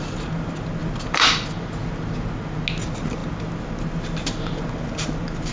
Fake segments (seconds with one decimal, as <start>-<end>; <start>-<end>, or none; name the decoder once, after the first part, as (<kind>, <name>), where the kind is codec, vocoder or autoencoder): none